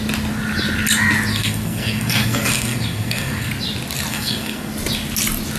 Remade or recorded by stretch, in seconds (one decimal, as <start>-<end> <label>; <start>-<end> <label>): 0.0-1.3 recorded; 1.3-3.5 remade; 3.5-4.1 recorded; 4.1-4.7 remade; 4.7-5.6 recorded